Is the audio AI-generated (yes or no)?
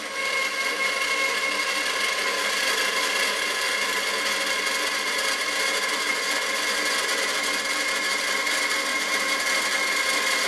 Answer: no